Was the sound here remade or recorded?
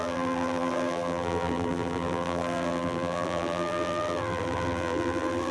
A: remade